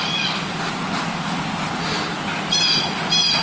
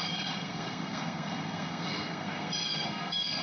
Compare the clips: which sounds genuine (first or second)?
first